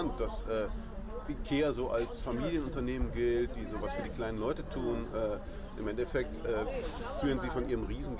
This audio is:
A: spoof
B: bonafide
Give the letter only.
B